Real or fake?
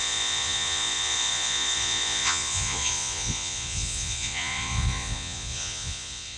fake